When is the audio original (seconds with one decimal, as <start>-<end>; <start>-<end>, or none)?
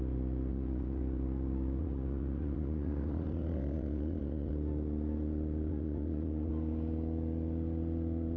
0.0-0.5; 1.0-1.8; 4.5-5.7; 6.5-8.4